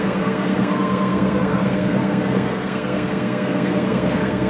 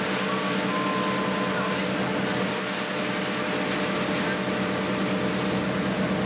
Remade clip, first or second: first